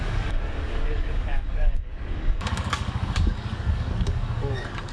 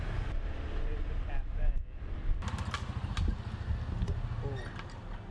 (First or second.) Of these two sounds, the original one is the second